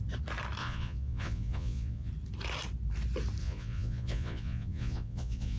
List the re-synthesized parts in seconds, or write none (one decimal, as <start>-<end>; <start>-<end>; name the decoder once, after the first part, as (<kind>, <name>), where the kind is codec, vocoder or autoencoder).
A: 0.6-2.1 (vocoder, Vocos); 3.4-5.6